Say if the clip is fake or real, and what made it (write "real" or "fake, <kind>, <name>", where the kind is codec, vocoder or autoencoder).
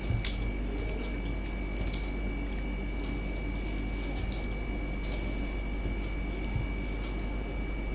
real